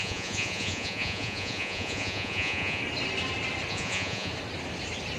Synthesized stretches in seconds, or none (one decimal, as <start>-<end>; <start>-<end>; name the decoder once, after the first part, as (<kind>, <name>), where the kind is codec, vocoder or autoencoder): 0.0-2.8 (vocoder, Vocos); 3.7-4.3